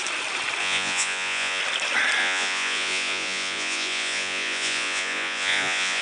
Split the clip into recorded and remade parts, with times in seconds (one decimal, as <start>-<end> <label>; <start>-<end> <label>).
0.0-0.6 recorded; 0.6-1.6 remade; 1.6-2.2 recorded; 2.2-6.0 remade